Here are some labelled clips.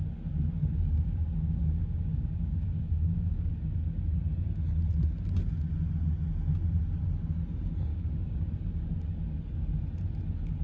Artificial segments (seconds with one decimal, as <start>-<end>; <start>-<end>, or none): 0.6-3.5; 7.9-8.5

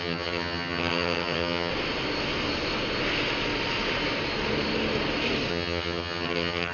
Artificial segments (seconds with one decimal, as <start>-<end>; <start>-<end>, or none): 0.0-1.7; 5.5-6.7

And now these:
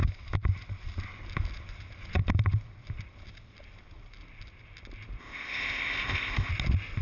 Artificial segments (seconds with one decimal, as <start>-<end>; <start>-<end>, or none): 5.2-6.5

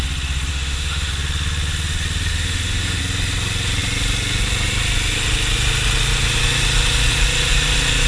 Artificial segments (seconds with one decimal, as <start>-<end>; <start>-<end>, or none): 0.5-1.1; 2.3-3.0